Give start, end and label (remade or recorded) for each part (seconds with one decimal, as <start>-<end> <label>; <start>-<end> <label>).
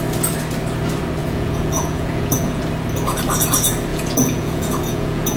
0.0-1.2 recorded; 1.2-2.6 remade; 2.6-3.9 recorded; 3.9-5.4 remade